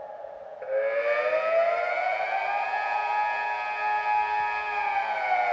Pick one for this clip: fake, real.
real